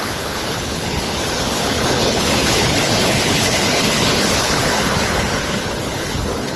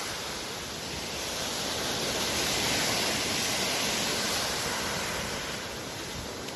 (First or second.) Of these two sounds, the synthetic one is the first